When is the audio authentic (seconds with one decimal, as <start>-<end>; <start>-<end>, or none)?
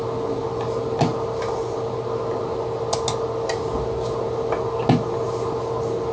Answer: 0.0-6.1